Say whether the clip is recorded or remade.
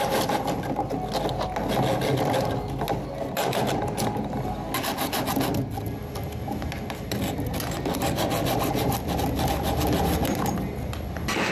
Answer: recorded